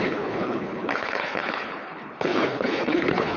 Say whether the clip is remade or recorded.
remade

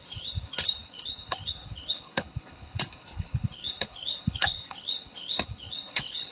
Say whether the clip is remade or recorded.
remade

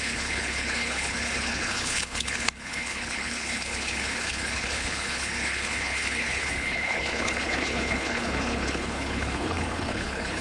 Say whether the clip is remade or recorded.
remade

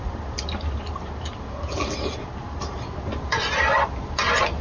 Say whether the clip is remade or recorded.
recorded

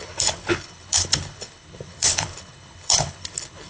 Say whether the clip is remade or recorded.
remade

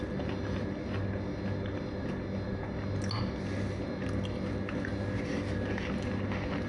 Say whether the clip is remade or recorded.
recorded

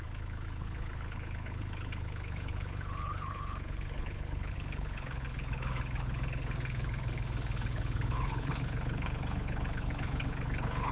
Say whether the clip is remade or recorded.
remade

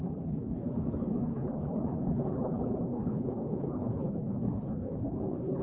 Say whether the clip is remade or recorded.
remade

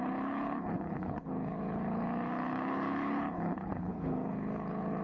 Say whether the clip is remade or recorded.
remade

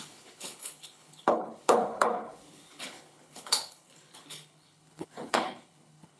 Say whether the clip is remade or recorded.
remade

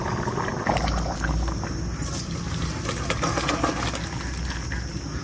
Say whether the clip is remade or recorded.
recorded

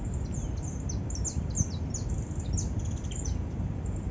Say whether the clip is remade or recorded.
recorded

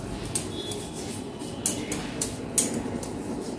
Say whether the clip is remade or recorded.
recorded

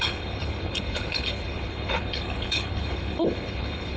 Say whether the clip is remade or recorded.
remade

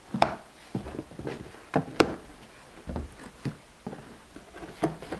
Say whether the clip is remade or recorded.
recorded